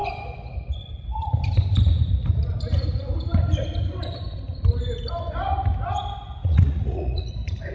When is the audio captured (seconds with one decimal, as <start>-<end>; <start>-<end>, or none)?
0.0-6.4; 7.3-7.7

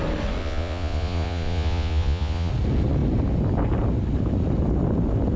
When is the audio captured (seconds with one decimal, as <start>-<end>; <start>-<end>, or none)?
0.0-0.4; 2.5-5.4